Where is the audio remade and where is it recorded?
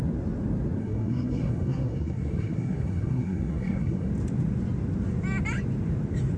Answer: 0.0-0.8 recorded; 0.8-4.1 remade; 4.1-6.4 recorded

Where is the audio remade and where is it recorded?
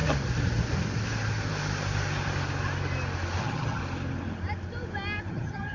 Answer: 0.0-3.4 recorded; 3.4-3.8 remade; 3.8-5.3 recorded; 5.3-5.7 remade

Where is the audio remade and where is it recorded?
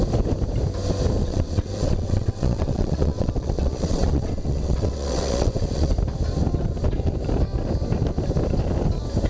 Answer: 0.0-1.2 recorded; 1.2-5.9 remade; 5.9-9.3 recorded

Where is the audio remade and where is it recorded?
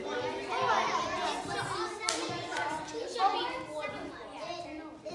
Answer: 0.0-5.1 recorded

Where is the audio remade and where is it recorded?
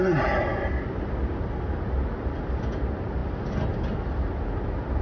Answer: 0.0-5.0 recorded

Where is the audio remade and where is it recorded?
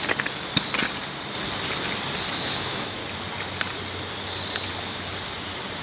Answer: 0.0-2.3 recorded; 2.3-3.0 remade; 3.0-5.8 recorded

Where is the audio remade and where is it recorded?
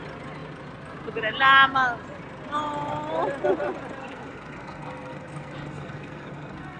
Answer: 0.0-4.0 recorded; 4.0-6.8 remade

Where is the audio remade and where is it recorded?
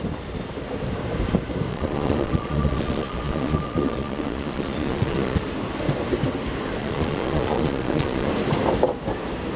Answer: 0.0-1.7 recorded; 1.7-5.4 remade; 5.4-6.8 recorded; 6.8-8.3 remade; 8.3-9.6 recorded